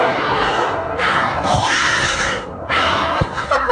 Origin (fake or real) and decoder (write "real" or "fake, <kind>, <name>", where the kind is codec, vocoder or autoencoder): fake, codec, SNAC